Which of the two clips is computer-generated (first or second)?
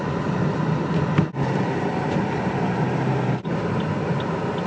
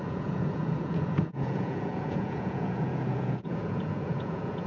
second